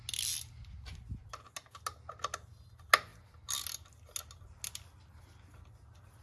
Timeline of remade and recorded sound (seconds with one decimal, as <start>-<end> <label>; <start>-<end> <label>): 0.0-6.2 recorded